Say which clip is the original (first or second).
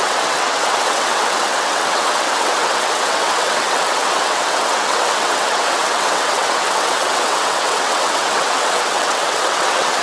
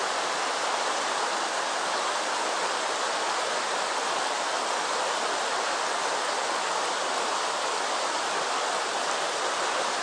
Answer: second